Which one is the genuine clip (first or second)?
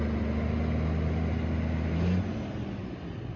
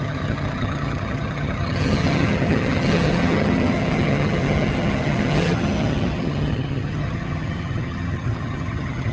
first